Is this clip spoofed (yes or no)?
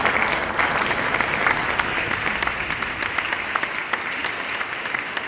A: no